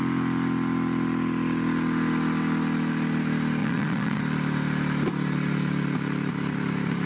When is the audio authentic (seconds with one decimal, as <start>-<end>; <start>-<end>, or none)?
0.0-3.6; 4.2-7.1